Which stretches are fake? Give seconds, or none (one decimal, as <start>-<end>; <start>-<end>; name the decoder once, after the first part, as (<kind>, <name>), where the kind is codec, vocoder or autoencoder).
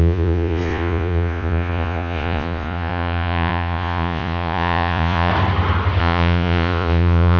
0.0-5.3 (vocoder, Vocos); 6.0-7.4